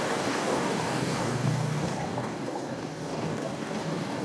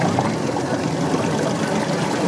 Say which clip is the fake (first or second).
first